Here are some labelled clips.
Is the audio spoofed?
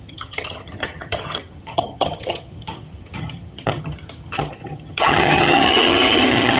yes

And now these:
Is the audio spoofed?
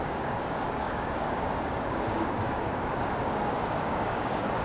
yes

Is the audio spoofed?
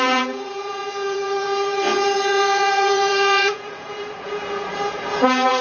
yes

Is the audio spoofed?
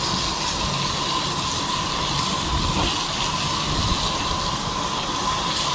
no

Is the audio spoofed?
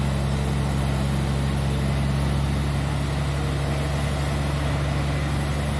no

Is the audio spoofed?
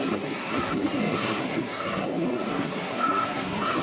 yes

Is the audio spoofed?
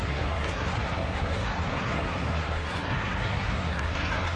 yes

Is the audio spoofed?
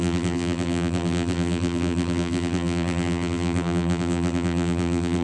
yes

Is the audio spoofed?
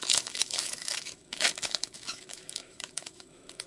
yes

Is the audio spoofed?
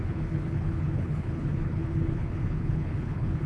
yes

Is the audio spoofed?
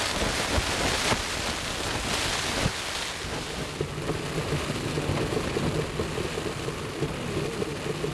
no